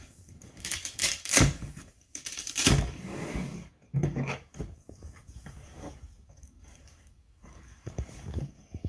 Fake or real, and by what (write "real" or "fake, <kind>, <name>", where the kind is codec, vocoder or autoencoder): fake, codec, DAC